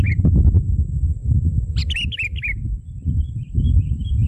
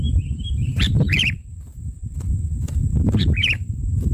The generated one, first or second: second